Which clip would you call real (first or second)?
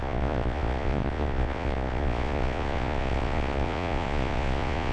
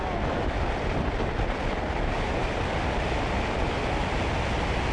second